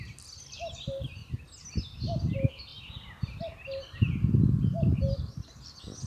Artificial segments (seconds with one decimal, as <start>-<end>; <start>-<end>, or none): none